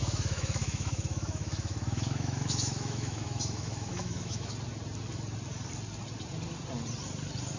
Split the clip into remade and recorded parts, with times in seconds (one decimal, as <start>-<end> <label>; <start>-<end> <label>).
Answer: 0.0-4.5 remade; 4.5-7.6 recorded